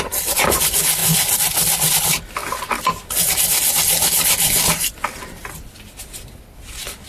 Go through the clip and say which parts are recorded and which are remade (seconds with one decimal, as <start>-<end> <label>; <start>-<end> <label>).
0.0-7.1 recorded